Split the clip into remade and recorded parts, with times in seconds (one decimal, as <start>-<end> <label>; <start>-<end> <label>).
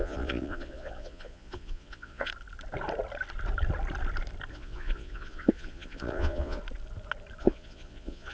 0.0-2.3 remade; 2.3-4.5 recorded; 4.5-6.6 remade; 6.6-7.4 recorded; 7.4-8.3 remade